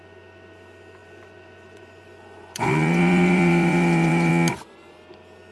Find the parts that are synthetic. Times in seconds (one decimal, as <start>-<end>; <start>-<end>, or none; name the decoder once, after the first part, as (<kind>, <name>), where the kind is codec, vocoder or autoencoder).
1.0-4.3 (vocoder, Vocos)